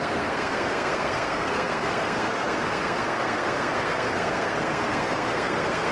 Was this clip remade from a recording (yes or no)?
yes